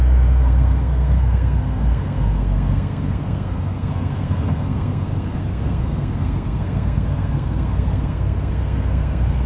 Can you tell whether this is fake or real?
fake